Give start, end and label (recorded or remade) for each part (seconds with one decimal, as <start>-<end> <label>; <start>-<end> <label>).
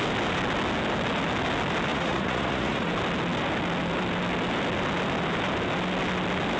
0.0-1.9 recorded; 1.9-2.9 remade; 2.9-6.6 recorded